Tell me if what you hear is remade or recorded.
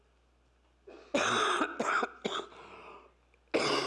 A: recorded